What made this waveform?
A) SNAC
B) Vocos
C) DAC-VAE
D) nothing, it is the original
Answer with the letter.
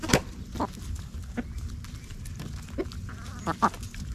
D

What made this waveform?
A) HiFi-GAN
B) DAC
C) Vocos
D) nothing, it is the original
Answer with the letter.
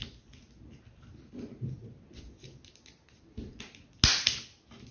D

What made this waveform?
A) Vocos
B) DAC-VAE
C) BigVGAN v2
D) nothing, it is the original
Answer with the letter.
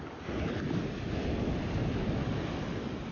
D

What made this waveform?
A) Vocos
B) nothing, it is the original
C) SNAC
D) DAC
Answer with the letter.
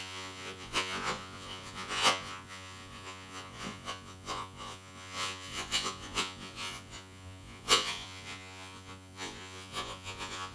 A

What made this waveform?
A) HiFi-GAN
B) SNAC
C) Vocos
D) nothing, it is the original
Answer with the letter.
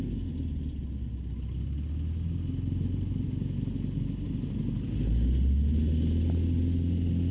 D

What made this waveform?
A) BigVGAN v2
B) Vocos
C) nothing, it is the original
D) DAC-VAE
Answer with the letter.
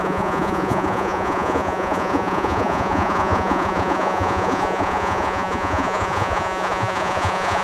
B